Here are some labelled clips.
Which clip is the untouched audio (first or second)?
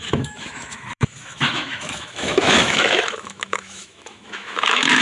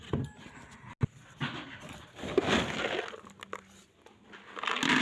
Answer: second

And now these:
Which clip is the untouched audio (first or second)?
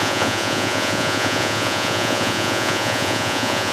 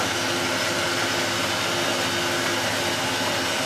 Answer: second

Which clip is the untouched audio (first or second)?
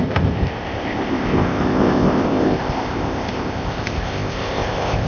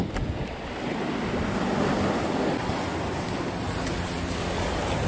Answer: second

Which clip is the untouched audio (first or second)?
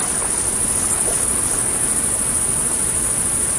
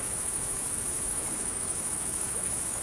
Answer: first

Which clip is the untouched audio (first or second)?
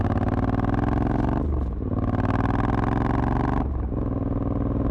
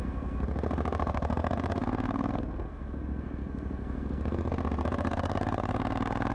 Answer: first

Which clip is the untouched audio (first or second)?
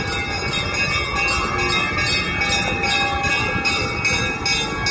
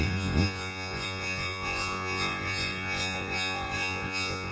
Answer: first